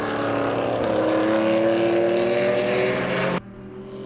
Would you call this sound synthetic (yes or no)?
no